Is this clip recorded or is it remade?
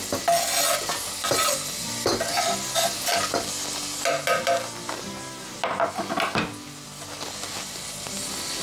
recorded